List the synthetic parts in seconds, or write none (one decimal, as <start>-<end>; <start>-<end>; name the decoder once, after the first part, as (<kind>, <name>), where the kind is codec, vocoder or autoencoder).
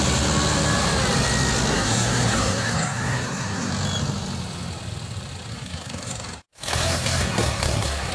1.7-3.7 (codec, SNAC); 5.5-8.1